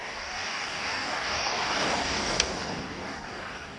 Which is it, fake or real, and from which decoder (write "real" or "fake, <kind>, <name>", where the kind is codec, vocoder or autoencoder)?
fake, codec, DAC